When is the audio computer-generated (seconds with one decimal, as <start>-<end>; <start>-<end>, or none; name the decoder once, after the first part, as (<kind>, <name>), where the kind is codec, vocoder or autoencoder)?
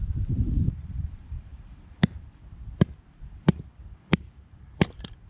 none